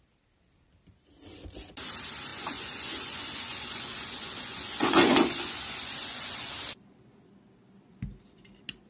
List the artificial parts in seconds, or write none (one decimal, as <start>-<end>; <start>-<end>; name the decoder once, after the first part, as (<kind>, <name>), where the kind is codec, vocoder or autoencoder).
2.3-6.5 (vocoder, Vocos)